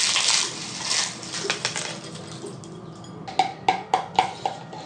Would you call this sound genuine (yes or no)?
yes